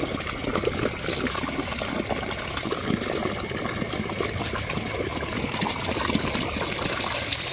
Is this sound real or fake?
real